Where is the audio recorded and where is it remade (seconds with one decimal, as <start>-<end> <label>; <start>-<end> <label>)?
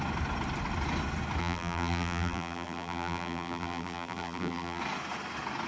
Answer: 0.0-1.4 recorded; 1.4-4.8 remade; 4.8-5.7 recorded